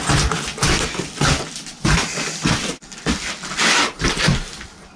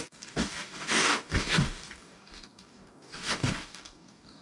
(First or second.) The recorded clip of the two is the first